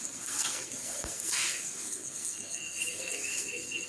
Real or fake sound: fake